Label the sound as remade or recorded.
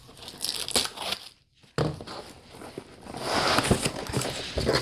recorded